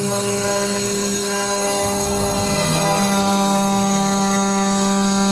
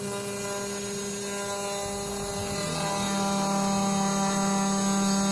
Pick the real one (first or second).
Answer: second